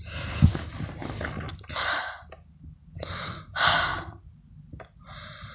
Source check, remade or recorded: recorded